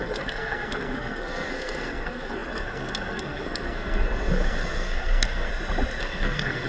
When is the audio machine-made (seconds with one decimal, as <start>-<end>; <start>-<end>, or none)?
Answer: 0.0-5.5; 6.0-6.7